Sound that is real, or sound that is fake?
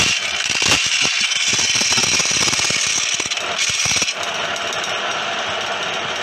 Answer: real